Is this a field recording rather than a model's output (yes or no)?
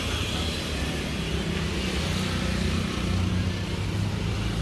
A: yes